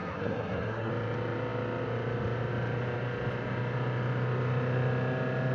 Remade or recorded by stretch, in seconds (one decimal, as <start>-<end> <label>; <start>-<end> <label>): 0.0-0.9 remade; 0.9-5.5 recorded